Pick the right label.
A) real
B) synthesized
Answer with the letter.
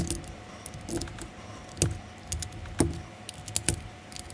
A